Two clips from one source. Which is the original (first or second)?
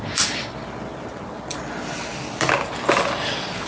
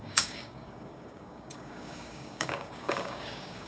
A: first